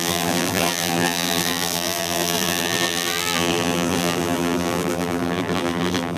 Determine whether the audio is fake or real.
fake